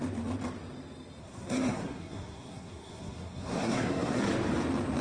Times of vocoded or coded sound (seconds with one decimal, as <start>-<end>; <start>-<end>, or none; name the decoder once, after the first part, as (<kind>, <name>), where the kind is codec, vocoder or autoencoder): 1.2-4.2 (codec, SNAC)

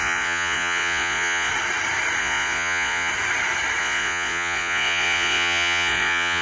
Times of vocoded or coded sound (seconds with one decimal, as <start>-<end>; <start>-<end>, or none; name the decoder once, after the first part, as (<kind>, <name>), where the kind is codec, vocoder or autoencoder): 0.0-1.5 (vocoder, Vocos); 2.2-3.1; 3.8-6.4

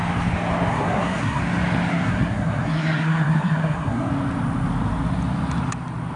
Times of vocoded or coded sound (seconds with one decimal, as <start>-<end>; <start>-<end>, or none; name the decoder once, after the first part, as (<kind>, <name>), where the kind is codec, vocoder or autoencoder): 0.7-1.4 (codec, SNAC); 1.9-4.1

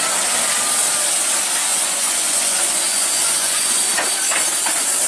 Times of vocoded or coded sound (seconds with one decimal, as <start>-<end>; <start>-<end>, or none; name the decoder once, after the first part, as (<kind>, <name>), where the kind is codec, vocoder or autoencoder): 1.7-3.9 (vocoder, Vocos)

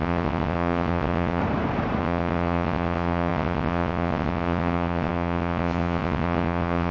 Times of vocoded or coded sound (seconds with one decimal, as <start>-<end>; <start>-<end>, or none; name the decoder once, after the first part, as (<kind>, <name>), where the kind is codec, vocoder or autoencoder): 0.0-1.4 (vocoder, WaveNeXt); 2.0-6.9

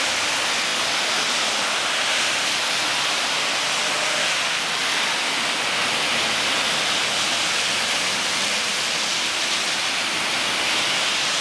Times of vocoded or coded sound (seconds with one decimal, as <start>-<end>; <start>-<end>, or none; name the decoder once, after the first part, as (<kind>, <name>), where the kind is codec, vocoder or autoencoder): 0.7-1.6 (vocoder, BigVGAN v2)

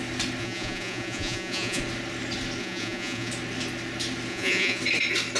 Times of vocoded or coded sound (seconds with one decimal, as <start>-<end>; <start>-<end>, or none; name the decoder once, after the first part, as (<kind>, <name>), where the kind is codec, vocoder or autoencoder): 0.4-1.8 (vocoder, Vocos); 2.6-3.3; 4.3-4.8

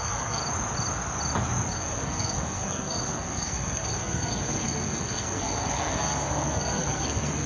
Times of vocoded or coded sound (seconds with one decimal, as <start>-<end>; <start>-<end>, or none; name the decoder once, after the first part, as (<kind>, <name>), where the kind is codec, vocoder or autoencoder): 0.0-0.4 (codec, SNAC); 1.7-7.5